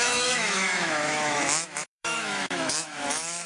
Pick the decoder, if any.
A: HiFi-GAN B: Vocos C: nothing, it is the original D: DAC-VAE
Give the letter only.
D